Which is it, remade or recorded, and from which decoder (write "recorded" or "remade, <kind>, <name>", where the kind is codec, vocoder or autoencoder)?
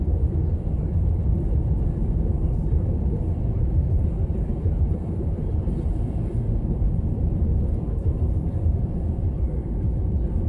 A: remade, vocoder, BigVGAN v2